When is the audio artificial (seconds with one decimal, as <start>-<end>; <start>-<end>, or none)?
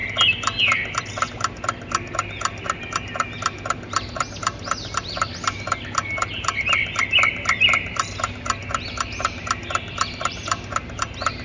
none